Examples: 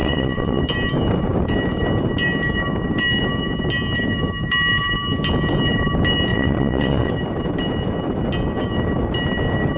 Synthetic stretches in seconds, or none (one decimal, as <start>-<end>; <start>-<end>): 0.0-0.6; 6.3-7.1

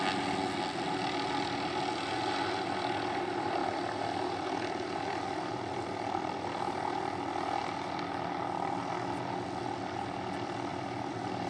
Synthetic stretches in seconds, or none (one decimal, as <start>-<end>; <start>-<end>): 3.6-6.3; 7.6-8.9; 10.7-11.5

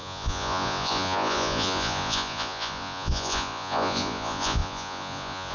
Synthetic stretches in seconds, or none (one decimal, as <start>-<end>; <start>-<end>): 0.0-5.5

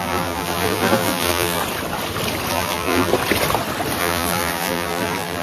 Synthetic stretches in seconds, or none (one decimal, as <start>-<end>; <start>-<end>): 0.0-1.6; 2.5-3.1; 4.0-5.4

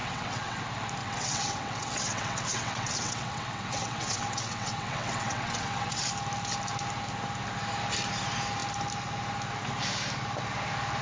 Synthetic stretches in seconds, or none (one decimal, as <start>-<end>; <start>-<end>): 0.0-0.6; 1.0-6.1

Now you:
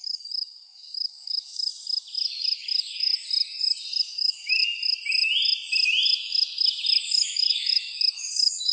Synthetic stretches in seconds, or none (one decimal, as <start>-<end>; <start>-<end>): 0.0-1.7; 2.3-3.1; 4.0-4.6; 7.0-8.7

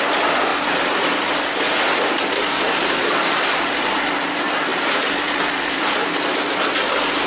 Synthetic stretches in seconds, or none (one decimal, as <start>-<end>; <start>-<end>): none

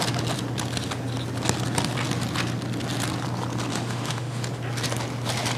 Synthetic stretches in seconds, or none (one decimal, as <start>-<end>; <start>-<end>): 3.7-4.4